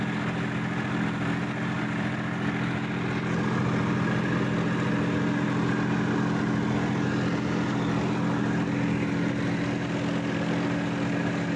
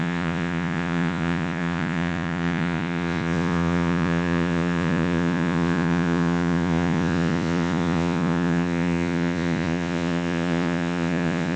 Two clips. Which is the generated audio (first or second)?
second